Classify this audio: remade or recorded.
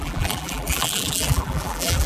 remade